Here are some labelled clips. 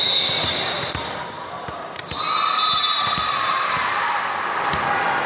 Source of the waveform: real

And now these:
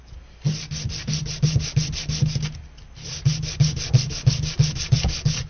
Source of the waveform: real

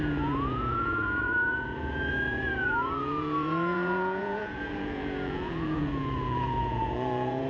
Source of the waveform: fake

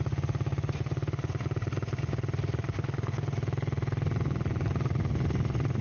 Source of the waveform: real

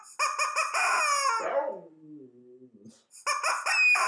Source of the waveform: real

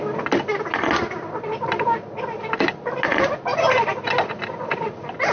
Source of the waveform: real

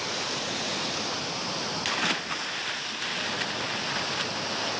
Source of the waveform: real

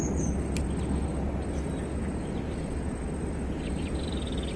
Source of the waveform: real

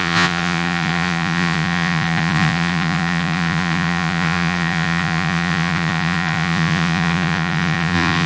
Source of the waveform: fake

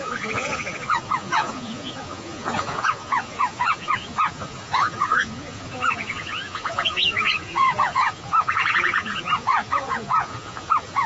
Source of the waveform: fake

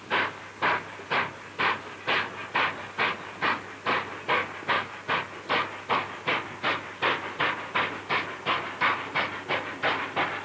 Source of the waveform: real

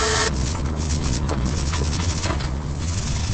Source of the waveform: fake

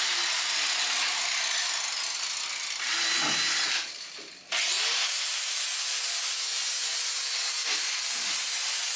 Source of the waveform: real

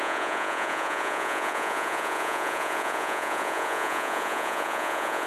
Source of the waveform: fake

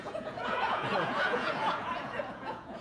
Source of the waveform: fake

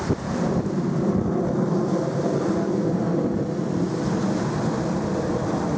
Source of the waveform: real